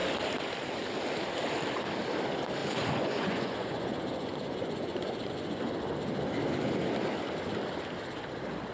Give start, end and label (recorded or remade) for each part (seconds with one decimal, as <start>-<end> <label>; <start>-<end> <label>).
0.0-2.6 recorded; 2.6-5.6 remade; 5.6-8.7 recorded